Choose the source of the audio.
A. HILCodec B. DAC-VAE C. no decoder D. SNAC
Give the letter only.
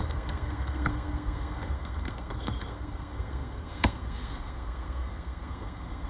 D